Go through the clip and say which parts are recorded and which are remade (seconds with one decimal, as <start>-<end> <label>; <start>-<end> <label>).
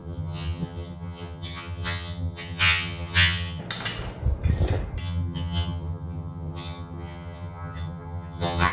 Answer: 0.0-3.6 remade; 3.6-5.0 recorded; 5.0-8.7 remade